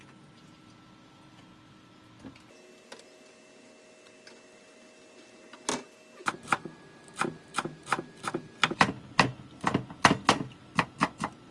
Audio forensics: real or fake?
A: real